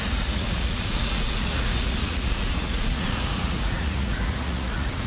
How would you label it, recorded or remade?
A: remade